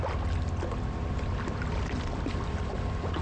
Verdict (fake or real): real